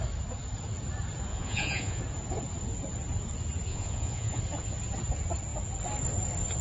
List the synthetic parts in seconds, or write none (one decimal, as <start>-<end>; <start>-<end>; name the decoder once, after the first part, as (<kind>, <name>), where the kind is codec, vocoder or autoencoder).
1.3-2.0 (vocoder, Vocos); 3.7-4.4